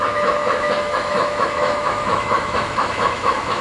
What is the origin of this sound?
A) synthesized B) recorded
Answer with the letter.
A